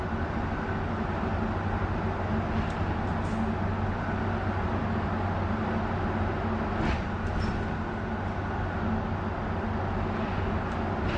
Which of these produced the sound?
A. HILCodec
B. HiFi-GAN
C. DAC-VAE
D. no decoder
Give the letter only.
D